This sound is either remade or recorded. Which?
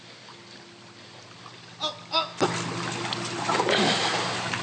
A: recorded